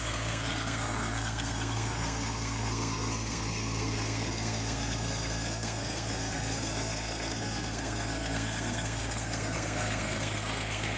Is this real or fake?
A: fake